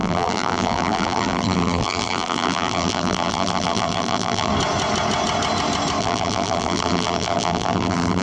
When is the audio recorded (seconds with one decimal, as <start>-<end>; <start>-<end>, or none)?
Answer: 4.5-6.0